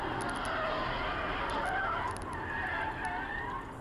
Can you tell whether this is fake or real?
real